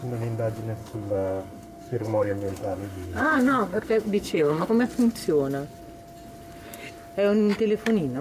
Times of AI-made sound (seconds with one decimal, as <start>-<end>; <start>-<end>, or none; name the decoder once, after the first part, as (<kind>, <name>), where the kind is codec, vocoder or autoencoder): 0.8-4.7 (codec, SNAC)